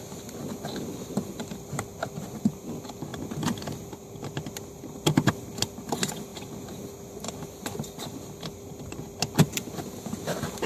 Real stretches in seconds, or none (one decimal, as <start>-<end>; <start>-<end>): 0.0-10.7